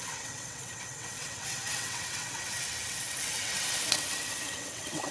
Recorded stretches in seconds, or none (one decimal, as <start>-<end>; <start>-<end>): none